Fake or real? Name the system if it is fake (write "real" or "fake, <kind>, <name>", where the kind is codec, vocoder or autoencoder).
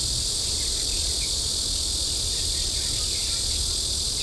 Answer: real